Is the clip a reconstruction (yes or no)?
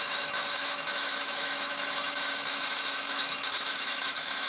yes